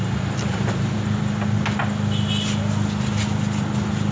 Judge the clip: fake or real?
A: real